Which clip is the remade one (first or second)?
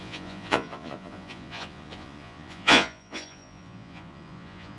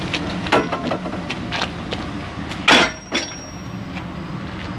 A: first